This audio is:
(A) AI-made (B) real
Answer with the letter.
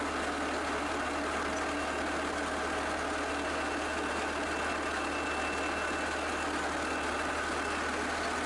B